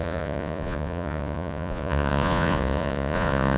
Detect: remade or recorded remade